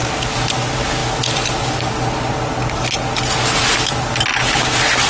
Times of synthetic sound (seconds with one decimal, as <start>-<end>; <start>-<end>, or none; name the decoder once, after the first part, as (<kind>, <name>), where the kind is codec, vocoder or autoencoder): none